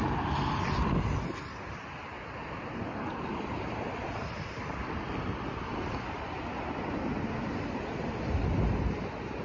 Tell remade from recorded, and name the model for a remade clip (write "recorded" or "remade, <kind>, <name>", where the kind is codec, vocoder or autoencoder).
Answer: recorded